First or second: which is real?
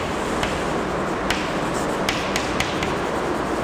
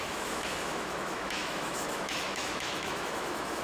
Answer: first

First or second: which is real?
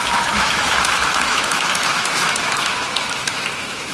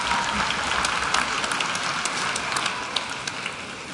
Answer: second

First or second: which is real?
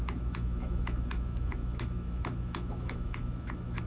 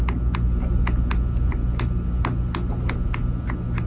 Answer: second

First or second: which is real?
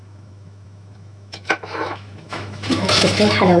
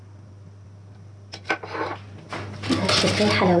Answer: second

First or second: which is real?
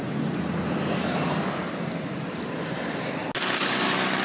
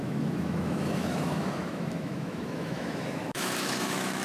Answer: first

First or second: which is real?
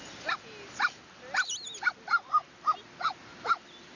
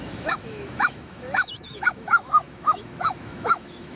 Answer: first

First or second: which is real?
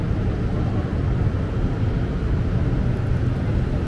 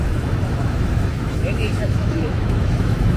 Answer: first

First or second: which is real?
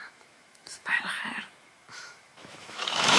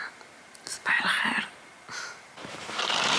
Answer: second